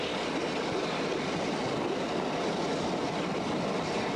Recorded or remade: recorded